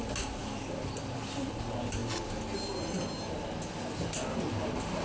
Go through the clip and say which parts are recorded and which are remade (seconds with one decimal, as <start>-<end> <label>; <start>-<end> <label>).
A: 0.0-5.0 recorded